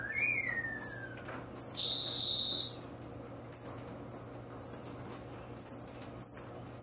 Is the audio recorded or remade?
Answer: recorded